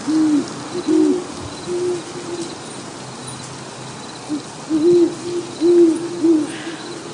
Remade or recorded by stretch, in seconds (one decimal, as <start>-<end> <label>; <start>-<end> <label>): 0.0-7.1 recorded